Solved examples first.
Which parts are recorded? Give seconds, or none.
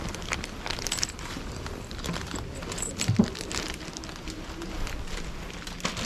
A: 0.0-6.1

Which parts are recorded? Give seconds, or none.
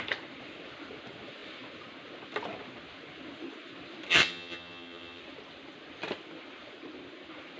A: 0.0-4.1; 5.2-7.6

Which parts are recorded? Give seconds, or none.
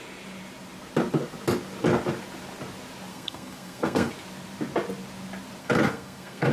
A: 0.0-3.1; 4.1-5.6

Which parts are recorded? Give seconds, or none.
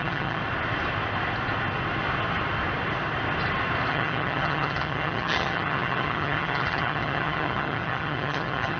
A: 0.4-3.9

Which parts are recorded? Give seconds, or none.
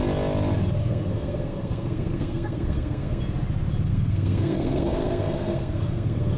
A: 0.0-0.8; 3.2-3.9